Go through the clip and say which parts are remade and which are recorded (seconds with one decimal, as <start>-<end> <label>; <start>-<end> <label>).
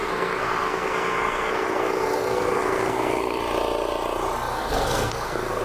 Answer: 0.0-3.4 remade; 3.4-4.5 recorded; 4.5-5.6 remade